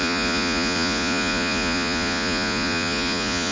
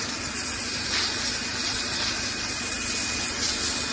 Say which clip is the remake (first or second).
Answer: first